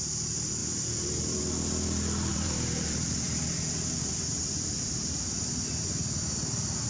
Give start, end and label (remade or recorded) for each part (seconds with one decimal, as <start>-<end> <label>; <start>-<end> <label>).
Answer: 0.0-0.6 recorded; 0.6-1.4 remade; 1.4-2.3 recorded; 2.3-3.7 remade; 3.7-6.9 recorded